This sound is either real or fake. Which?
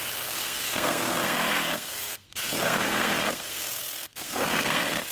fake